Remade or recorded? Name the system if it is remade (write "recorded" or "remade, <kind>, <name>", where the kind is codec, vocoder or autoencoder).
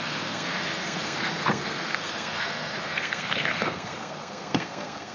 remade, codec, SNAC